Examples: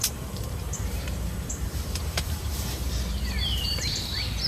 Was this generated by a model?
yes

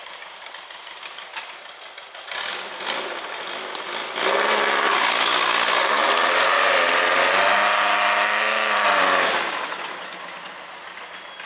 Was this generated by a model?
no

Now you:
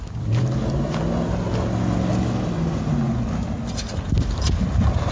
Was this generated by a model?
no